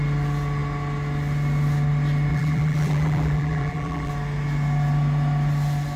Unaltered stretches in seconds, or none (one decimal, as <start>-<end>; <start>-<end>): 0.0-2.3; 4.1-6.0

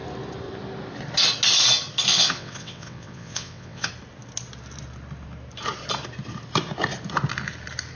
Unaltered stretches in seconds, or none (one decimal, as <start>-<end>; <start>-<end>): 0.0-2.1; 3.9-7.9